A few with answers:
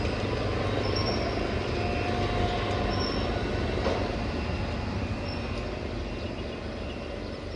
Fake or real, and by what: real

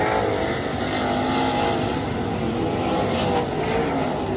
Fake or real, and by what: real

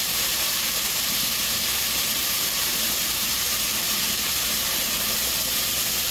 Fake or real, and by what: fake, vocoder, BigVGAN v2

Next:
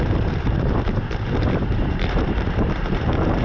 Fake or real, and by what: fake, vocoder, BigVGAN v2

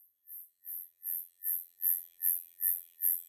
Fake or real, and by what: fake, vocoder, BigVGAN v2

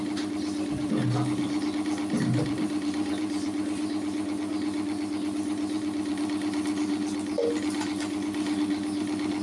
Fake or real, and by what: fake, vocoder, BigVGAN v2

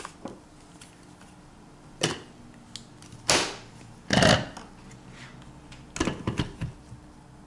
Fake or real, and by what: real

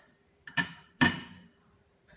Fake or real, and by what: fake, vocoder, BigVGAN v2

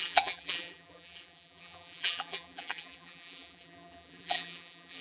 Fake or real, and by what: fake, vocoder, BigVGAN v2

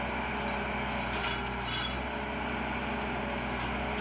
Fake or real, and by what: real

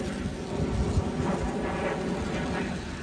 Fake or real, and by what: real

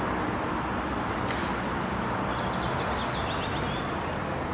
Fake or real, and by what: real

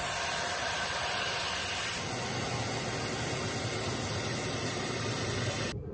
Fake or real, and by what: fake, vocoder, BigVGAN v2